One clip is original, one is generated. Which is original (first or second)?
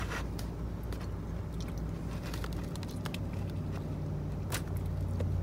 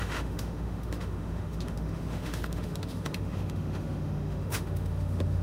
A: first